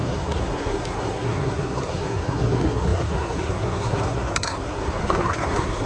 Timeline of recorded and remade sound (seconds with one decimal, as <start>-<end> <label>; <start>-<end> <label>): 0.0-5.9 remade